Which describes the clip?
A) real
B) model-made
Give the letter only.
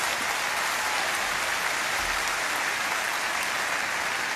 A